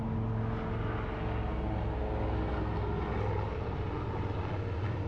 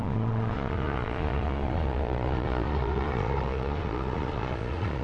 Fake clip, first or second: second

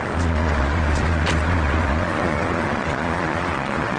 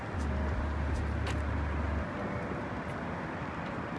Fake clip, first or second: first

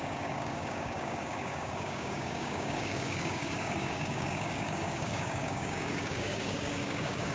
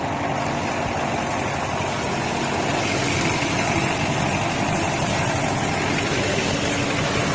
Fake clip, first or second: first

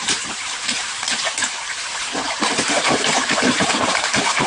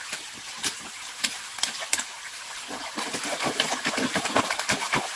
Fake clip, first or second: first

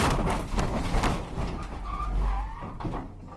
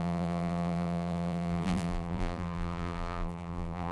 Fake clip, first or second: second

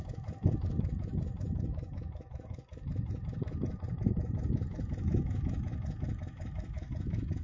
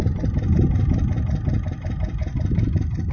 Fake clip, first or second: first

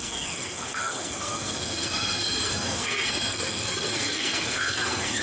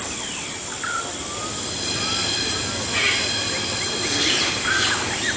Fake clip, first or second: first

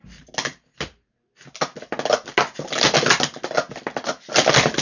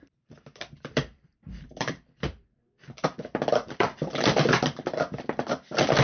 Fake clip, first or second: second